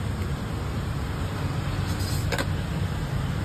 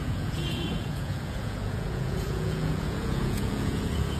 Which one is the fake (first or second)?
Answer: second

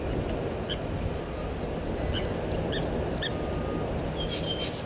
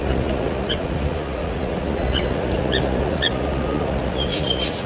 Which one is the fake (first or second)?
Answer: second